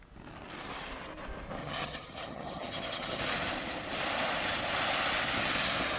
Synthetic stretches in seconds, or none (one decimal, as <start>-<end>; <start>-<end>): 1.6-3.2